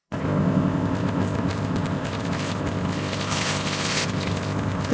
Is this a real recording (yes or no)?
no